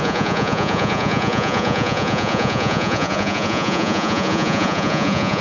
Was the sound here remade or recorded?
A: remade